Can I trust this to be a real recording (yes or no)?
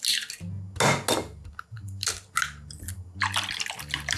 yes